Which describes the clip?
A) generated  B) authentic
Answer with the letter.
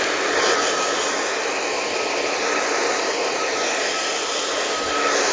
B